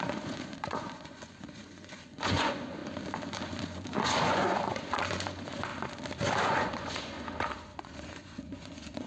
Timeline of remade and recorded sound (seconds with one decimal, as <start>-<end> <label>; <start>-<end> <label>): 0.0-2.8 remade; 2.8-3.3 recorded; 3.3-5.7 remade; 5.7-6.4 recorded; 6.4-9.1 remade